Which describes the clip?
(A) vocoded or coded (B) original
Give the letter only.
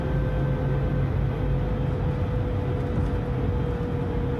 B